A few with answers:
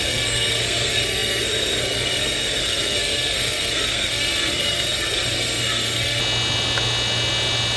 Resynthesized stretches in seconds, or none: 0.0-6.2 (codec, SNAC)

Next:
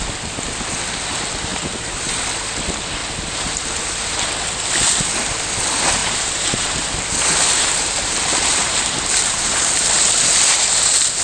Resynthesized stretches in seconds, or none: 1.5-2.3 (vocoder, BigVGAN v2); 3.0-4.3; 6.0-10.7

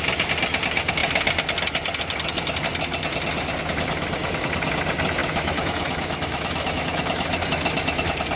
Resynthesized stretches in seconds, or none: 5.2-7.3 (autoencoder, DAC-VAE)

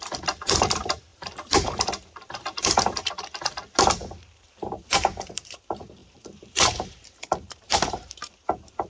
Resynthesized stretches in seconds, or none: 0.0-8.9 (vocoder, BigVGAN v2)

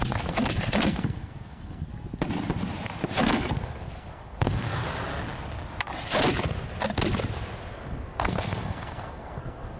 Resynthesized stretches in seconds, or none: 0.0-1.9 (codec, SNAC); 3.2-4.8; 7.7-9.8

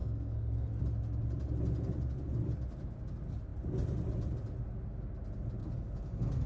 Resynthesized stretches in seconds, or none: 0.0-0.8 (codec, SNAC); 5.6-6.5

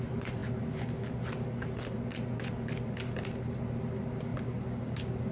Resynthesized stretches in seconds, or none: none

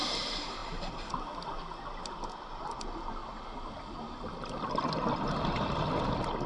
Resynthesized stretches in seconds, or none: none